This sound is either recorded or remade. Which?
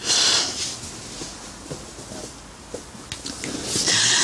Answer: recorded